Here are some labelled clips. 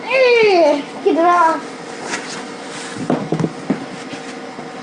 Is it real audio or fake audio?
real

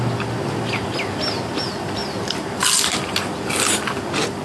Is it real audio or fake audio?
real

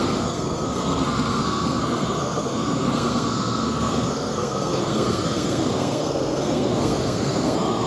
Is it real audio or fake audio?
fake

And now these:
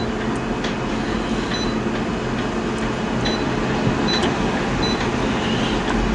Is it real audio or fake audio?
real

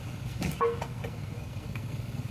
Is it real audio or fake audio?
fake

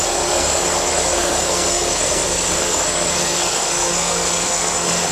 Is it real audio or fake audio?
fake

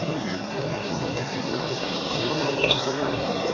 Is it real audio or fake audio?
fake